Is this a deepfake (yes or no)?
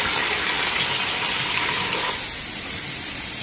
no